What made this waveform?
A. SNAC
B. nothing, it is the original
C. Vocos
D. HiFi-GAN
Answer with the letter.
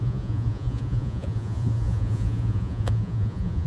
C